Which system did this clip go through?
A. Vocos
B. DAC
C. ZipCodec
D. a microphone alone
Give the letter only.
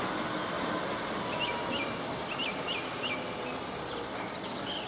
D